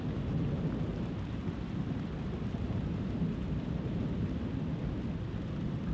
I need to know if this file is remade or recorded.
recorded